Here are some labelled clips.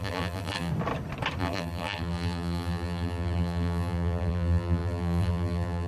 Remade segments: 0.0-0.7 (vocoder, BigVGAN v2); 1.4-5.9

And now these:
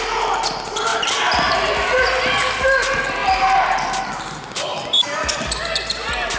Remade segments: 3.2-4.1 (vocoder, BigVGAN v2); 4.7-5.6

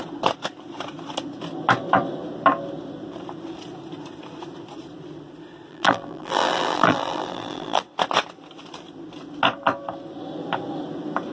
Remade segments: 5.7-7.8 (vocoder, BigVGAN v2)

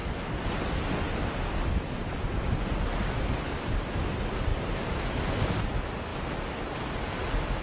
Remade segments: none

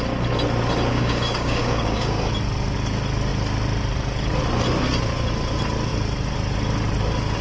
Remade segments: 0.9-2.3 (codec, DAC)

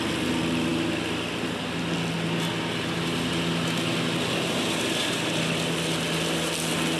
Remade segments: none